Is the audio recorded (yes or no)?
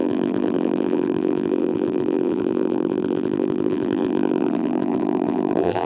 no